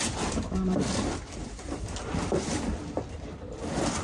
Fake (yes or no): yes